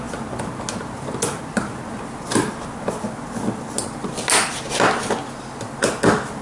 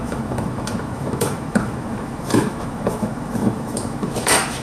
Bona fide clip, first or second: first